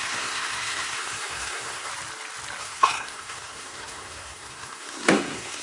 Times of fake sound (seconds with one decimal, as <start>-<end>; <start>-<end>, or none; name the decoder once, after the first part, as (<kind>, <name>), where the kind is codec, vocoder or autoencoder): 0.0-1.9 (codec, SNAC); 2.6-5.6

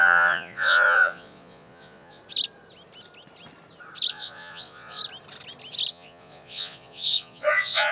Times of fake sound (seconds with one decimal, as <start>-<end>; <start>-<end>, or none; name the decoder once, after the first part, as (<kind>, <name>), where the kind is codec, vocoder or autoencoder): 0.0-2.2 (vocoder, Vocos); 4.1-5.0; 5.9-7.9

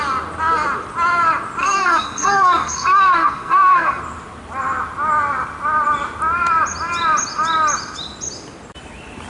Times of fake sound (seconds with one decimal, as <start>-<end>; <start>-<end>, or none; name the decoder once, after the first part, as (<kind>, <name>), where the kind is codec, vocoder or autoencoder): 1.6-4.0 (codec, SNAC)

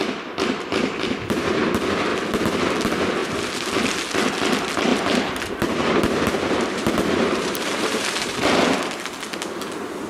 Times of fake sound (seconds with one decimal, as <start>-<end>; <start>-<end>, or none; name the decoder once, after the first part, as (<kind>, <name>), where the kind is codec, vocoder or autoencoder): 4.9-8.9 (vocoder, BigVGAN v2)